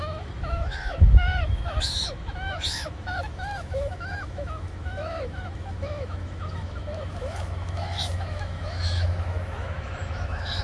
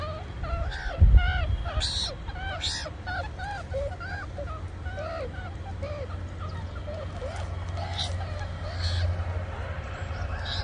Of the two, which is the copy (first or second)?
first